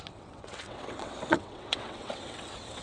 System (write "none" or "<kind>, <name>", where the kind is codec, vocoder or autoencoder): vocoder, WaveNeXt